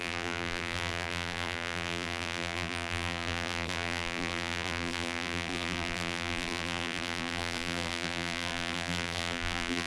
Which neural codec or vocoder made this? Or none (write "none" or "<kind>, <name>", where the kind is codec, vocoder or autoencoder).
vocoder, BigVGAN v2